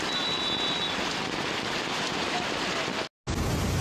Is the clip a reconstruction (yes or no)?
no